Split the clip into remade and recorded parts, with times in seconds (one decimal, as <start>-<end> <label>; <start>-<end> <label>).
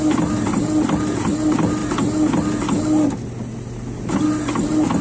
0.0-5.0 recorded